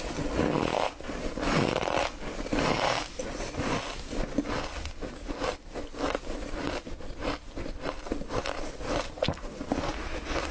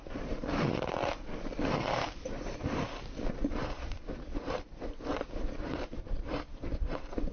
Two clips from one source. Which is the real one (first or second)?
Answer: first